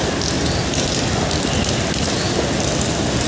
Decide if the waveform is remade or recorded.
remade